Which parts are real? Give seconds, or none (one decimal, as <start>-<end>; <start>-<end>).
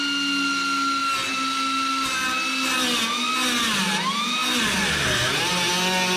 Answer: 0.0-6.2